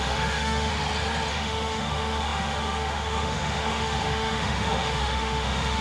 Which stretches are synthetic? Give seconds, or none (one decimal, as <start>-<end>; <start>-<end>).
0.0-0.7; 1.3-5.8